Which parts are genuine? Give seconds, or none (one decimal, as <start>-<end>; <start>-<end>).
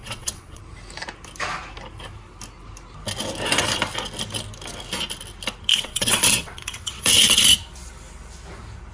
0.6-5.7; 7.4-8.9